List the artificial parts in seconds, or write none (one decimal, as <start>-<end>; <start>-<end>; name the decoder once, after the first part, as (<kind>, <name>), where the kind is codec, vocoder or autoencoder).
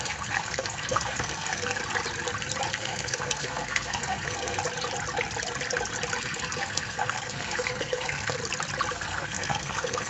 0.0-1.8 (codec, SNAC); 2.7-4.6; 6.2-8.4; 8.9-10.1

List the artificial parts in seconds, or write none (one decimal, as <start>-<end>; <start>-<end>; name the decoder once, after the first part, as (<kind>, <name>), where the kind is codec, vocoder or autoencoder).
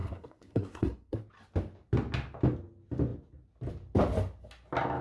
0.0-1.2 (codec, SNAC)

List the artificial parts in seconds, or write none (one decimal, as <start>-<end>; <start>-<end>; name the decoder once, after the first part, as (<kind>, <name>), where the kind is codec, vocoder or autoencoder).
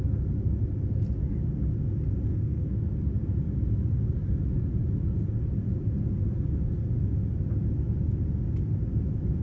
2.3-2.8 (codec, SNAC)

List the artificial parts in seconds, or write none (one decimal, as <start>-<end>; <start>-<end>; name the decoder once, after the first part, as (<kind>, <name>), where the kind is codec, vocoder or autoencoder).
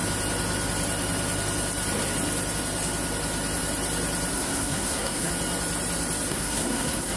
4.3-5.3 (codec, SNAC); 6.3-7.2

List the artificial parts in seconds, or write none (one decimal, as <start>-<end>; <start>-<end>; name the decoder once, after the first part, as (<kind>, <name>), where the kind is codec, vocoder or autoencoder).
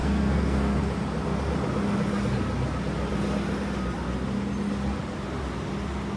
0.0-0.8 (codec, SNAC)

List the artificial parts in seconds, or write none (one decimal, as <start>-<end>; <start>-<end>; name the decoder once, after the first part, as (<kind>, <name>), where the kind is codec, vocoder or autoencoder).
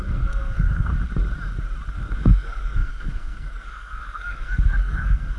0.0-0.9 (codec, SNAC); 1.9-5.4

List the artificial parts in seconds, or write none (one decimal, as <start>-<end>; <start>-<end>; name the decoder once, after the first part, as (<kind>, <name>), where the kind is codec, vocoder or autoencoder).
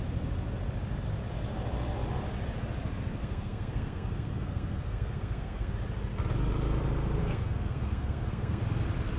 3.2-5.7 (codec, SNAC); 7.2-8.6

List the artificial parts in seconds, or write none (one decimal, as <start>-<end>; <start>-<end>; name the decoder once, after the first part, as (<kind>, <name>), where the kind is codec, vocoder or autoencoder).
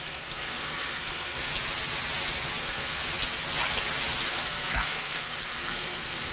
0.0-1.5 (codec, SNAC); 2.6-3.0; 4.3-6.3